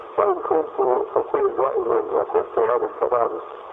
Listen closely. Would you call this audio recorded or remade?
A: remade